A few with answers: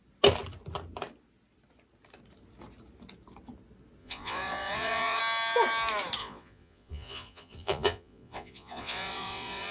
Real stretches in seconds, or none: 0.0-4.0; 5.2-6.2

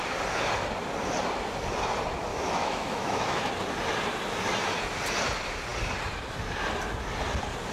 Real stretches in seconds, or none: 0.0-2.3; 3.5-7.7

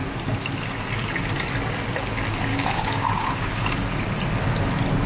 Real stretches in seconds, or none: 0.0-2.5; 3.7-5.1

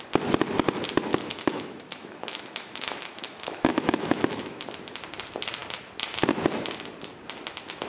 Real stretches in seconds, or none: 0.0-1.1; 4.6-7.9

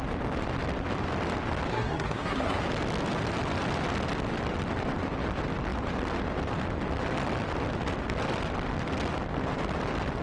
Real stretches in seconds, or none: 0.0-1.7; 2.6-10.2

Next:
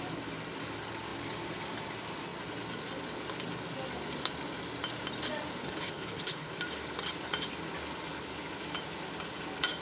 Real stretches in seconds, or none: 0.0-5.6; 6.5-9.8